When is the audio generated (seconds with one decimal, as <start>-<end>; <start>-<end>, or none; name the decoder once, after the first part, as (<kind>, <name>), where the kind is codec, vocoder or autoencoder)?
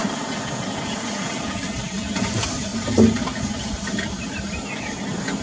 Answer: none